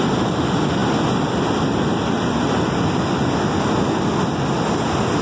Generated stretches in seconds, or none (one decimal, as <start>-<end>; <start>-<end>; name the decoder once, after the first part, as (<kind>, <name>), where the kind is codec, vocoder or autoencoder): none